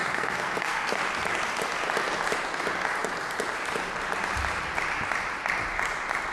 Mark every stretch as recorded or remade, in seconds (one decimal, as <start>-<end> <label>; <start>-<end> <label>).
0.0-1.0 remade; 1.0-6.3 recorded